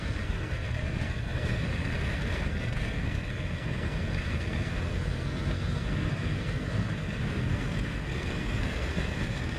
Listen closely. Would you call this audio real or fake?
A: fake